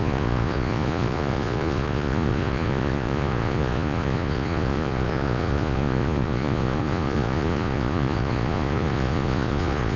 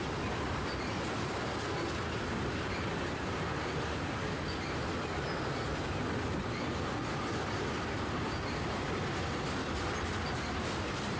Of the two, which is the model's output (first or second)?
first